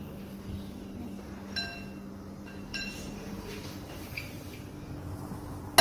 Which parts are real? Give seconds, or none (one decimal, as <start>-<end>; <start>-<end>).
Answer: 0.0-2.7; 4.5-5.8